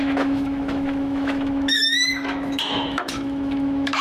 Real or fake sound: fake